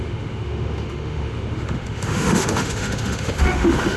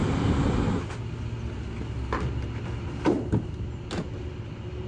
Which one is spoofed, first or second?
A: first